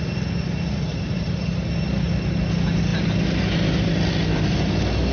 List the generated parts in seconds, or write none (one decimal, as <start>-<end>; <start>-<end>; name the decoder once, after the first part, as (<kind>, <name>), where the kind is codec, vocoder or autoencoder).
0.9-1.7 (vocoder, BigVGAN v2)